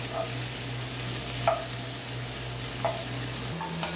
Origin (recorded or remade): recorded